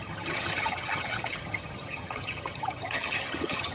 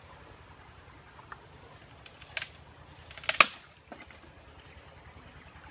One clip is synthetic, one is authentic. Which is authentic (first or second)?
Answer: second